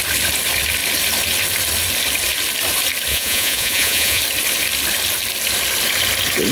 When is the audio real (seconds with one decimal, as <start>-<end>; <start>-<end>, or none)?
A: 0.0-3.1; 4.2-6.5